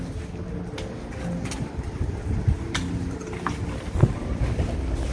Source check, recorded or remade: recorded